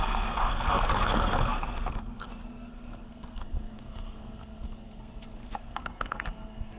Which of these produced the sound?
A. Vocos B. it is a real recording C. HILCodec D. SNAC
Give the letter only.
D